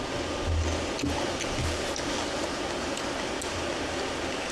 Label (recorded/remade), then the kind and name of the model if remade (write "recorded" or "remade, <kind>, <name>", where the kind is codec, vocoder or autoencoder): recorded